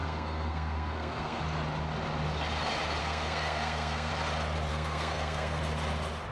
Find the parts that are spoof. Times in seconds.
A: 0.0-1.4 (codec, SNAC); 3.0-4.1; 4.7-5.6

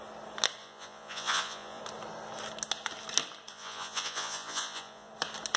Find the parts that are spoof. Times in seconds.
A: 0.6-1.8 (vocoder, Vocos); 3.5-5.1

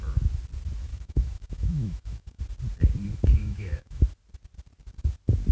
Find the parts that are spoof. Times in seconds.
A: 0.9-2.4 (autoencoder, DAC-VAE); 3.4-4.0